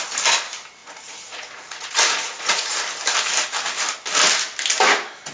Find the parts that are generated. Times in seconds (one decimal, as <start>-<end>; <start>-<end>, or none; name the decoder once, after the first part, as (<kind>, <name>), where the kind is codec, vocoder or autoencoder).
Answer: 0.8-2.7 (vocoder, Vocos)